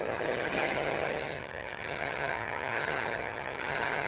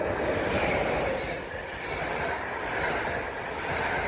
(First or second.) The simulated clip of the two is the first